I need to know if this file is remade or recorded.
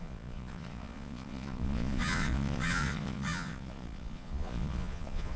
remade